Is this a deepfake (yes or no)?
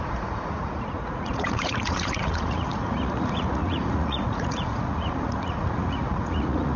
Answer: yes